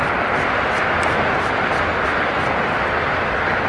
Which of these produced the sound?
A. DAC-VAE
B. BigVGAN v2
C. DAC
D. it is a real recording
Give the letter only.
D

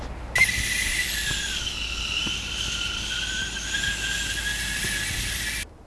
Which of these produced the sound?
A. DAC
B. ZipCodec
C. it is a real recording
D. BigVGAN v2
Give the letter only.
C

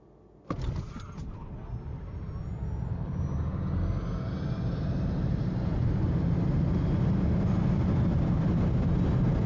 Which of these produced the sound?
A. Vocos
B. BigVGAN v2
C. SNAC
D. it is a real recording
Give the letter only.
D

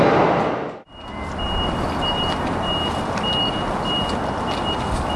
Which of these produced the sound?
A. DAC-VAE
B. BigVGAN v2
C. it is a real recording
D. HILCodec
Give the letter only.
C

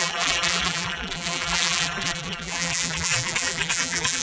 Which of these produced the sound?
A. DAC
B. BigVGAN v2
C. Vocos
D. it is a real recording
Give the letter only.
B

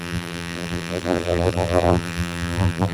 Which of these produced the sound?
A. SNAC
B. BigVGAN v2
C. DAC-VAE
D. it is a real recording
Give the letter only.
B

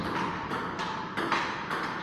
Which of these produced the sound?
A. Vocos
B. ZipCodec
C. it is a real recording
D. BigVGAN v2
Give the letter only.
C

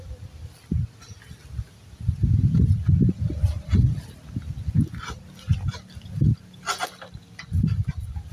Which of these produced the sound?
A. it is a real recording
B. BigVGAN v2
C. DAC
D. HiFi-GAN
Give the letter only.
A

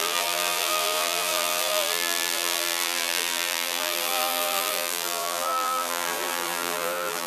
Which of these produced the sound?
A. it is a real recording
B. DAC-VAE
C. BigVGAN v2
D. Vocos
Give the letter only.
C